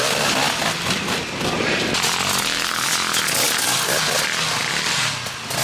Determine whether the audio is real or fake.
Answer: real